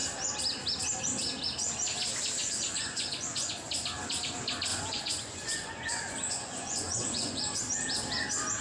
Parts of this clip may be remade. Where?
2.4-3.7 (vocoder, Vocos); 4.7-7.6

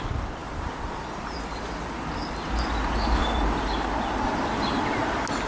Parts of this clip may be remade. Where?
none

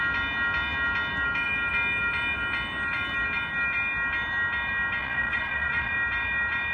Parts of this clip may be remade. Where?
5.0-5.9 (vocoder, Vocos)

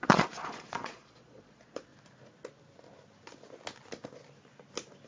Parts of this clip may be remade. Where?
0.0-1.9 (vocoder, Vocos)

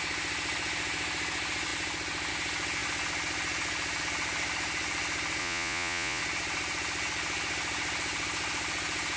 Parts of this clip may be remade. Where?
5.4-6.2 (vocoder, Vocos)

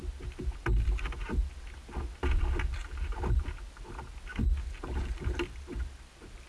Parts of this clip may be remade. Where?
none